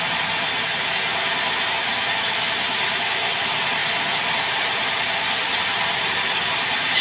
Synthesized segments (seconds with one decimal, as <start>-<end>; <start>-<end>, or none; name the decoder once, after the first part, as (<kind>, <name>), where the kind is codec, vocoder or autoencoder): 3.8-6.0 (vocoder, BigVGAN v2)

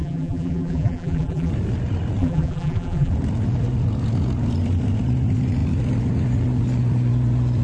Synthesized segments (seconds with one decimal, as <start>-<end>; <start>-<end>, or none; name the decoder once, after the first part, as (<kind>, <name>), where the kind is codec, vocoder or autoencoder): 0.0-1.5 (vocoder, BigVGAN v2); 2.2-3.1

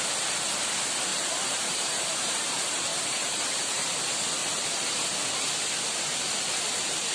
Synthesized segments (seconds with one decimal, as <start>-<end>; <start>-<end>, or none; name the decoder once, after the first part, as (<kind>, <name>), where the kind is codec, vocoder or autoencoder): 1.1-2.5 (vocoder, BigVGAN v2); 2.9-3.9

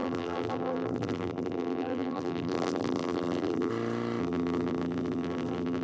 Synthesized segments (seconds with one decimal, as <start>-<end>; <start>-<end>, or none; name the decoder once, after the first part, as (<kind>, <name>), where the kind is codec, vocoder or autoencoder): 0.0-3.7 (vocoder, BigVGAN v2); 4.2-5.8

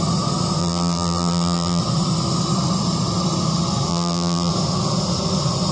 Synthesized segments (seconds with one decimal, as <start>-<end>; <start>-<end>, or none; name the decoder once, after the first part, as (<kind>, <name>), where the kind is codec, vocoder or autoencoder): 0.6-1.8 (vocoder, BigVGAN v2); 3.9-4.5